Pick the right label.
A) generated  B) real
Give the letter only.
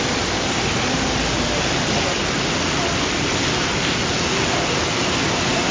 B